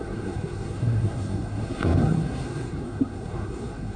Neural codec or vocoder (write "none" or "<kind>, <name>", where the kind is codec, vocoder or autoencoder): codec, SNAC